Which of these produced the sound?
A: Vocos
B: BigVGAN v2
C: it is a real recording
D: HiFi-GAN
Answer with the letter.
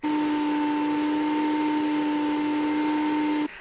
C